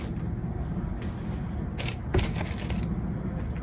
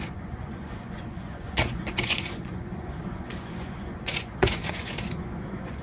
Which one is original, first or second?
first